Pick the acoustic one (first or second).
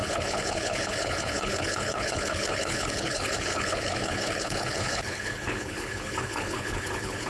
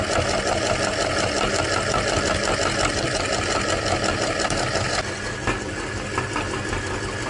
second